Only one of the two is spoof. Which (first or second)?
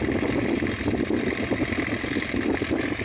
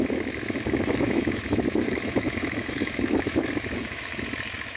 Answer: second